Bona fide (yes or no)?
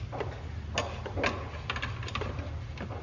yes